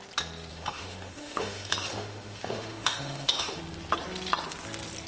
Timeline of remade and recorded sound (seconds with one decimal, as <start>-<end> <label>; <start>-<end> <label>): 0.0-0.5 recorded; 0.5-3.6 remade; 3.6-5.1 recorded